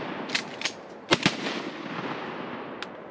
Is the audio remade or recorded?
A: recorded